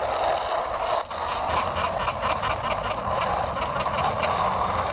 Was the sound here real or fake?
real